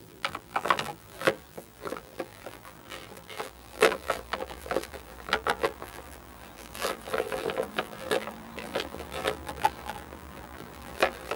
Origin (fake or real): fake